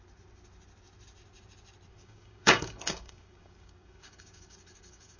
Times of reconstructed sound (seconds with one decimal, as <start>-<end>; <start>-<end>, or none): 1.9-5.2